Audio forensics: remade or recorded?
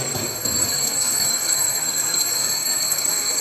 remade